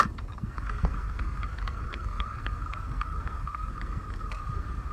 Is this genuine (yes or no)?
no